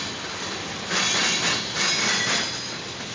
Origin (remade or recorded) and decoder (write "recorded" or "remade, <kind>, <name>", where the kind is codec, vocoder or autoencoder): recorded